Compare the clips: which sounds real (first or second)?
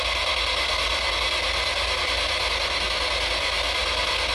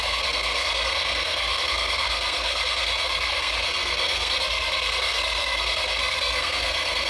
first